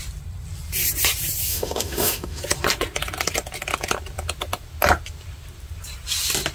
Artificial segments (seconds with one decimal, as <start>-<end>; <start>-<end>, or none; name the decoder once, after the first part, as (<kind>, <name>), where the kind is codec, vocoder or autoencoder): 1.5-2.4 (autoencoder, DAC-VAE)